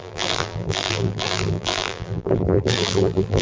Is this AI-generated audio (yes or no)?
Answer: yes